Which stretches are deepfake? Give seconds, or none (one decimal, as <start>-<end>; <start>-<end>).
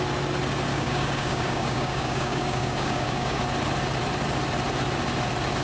0.7-3.4